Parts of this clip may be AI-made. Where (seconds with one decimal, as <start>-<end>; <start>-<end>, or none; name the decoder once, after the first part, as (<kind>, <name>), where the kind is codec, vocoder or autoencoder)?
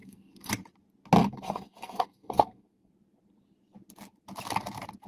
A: 0.0-0.5 (codec, SNAC); 1.2-2.9